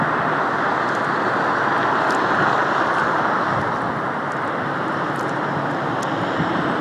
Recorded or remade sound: recorded